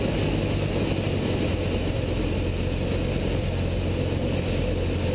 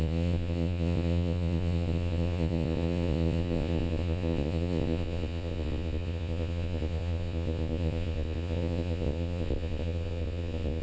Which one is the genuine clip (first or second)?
first